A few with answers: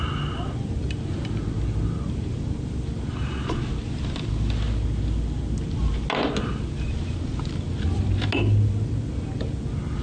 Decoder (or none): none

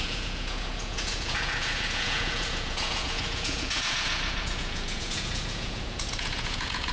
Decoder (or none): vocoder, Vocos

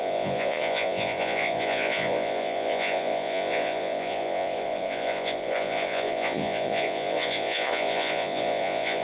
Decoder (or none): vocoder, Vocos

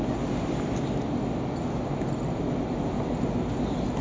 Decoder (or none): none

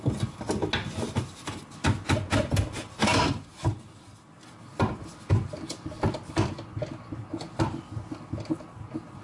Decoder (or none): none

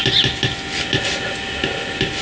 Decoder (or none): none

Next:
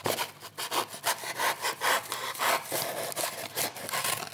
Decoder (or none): none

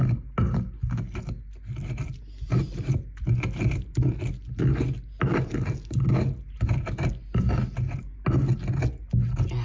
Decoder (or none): none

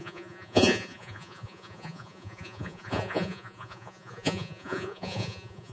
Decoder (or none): vocoder, Vocos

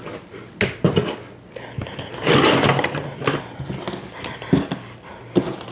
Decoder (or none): none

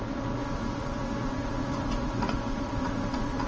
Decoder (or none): vocoder, Vocos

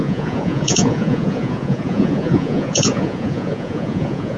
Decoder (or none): vocoder, Vocos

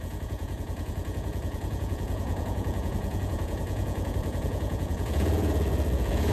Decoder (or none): vocoder, Vocos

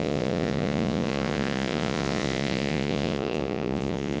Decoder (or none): vocoder, Vocos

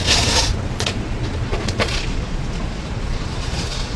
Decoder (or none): vocoder, Vocos